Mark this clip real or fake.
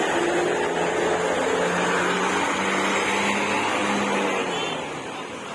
real